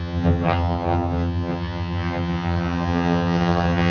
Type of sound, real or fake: fake